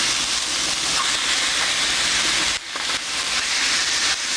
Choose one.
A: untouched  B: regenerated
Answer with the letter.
A